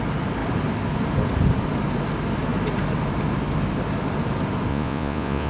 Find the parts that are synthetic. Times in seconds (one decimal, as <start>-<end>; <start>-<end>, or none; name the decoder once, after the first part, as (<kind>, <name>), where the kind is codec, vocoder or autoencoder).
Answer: 4.7-5.5 (vocoder, Vocos)

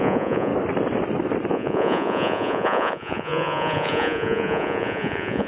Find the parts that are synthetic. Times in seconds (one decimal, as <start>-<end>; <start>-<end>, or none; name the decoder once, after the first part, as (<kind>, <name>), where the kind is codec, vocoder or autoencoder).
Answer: 0.0-0.5 (vocoder, Vocos); 1.5-5.5

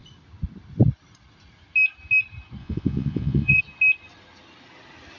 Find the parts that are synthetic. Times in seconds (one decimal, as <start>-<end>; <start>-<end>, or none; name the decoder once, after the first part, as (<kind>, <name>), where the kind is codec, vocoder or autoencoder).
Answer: 2.6-3.6 (vocoder, Vocos)